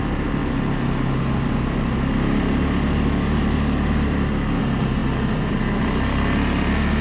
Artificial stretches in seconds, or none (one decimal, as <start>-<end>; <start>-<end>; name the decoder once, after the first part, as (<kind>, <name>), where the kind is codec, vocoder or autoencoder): none